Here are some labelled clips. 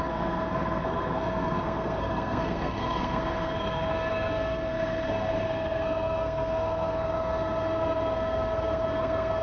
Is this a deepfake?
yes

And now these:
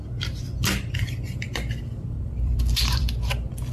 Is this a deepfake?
yes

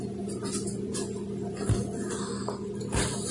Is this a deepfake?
no